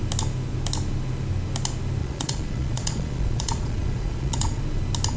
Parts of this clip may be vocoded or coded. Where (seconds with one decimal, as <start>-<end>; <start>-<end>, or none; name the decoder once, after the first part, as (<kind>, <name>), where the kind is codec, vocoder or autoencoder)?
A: 2.0-4.6 (vocoder, Vocos)